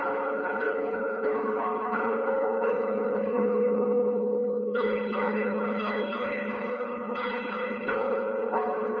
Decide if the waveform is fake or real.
fake